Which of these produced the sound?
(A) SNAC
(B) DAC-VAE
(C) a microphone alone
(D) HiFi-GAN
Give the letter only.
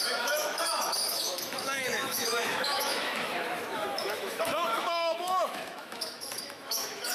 B